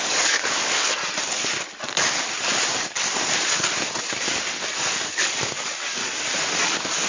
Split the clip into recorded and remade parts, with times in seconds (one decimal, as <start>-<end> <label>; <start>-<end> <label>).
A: 0.0-1.0 remade; 1.0-4.9 recorded; 4.9-6.0 remade; 6.0-6.6 recorded; 6.6-7.1 remade

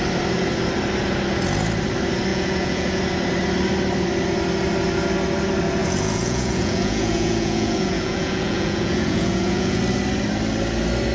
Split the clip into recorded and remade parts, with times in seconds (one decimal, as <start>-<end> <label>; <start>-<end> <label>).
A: 0.0-2.3 recorded; 2.3-3.0 remade; 3.0-5.8 recorded; 5.8-9.8 remade; 9.8-11.1 recorded

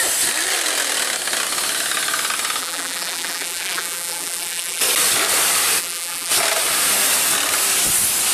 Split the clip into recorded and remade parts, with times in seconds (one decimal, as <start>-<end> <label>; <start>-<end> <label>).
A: 0.0-2.6 recorded; 2.6-4.8 remade; 4.8-5.8 recorded; 5.8-6.3 remade; 6.3-8.3 recorded

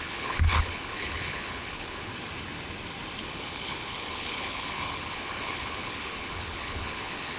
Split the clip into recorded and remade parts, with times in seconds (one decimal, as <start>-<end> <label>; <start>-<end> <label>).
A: 0.0-2.1 remade; 2.1-3.2 recorded; 3.2-7.4 remade

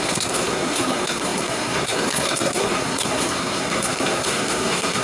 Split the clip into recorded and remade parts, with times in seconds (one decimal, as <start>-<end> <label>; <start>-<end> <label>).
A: 0.0-5.0 remade